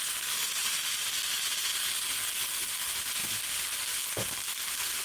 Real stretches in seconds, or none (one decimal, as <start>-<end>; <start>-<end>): 0.0-5.0